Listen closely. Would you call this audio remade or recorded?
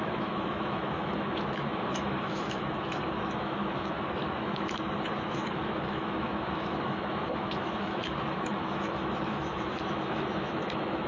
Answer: remade